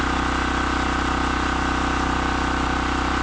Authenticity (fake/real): real